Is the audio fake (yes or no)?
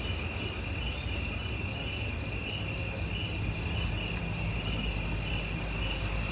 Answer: no